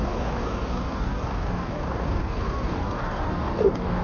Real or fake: fake